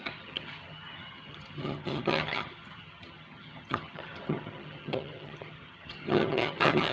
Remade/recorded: remade